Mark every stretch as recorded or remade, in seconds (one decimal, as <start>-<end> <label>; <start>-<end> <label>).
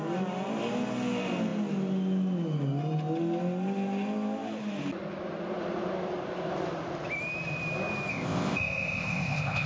0.0-8.1 recorded; 8.1-9.7 remade